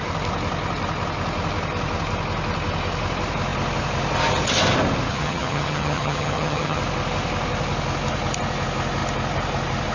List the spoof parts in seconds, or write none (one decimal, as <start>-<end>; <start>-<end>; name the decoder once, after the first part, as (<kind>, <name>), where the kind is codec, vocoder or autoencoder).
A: 5.1-6.8 (vocoder, HiFi-GAN)